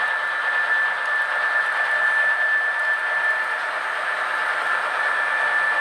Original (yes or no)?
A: yes